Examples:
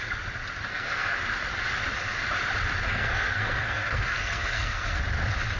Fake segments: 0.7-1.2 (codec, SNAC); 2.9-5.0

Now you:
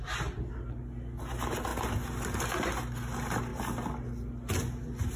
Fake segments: none

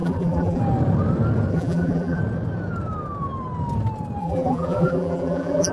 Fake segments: 0.0-0.6 (vocoder, BigVGAN v2); 1.5-2.2; 4.2-5.7

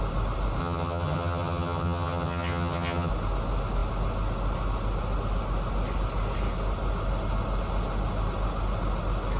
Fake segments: 0.6-3.1 (vocoder, HiFi-GAN)

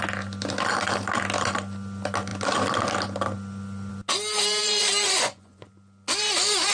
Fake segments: 4.6-5.7 (vocoder, Vocos)

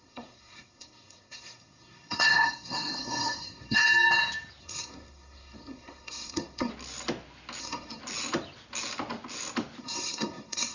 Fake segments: 0.0-3.8 (codec, SNAC); 4.6-6.7; 7.6-8.0; 9.8-10.7